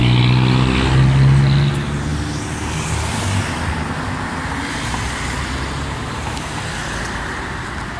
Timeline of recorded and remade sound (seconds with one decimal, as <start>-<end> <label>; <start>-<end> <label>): 0.0-8.0 recorded